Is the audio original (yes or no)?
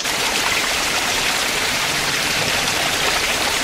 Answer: no